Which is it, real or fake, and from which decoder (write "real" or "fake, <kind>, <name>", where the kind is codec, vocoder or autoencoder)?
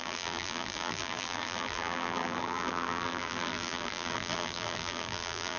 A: fake, vocoder, BigVGAN v2